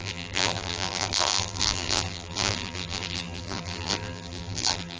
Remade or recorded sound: remade